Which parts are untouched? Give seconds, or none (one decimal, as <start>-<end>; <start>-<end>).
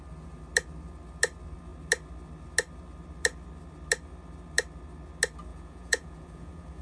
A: 0.0-5.5